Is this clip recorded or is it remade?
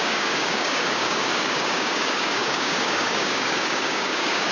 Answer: remade